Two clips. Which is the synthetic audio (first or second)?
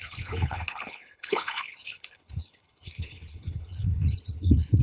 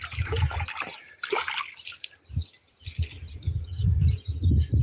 first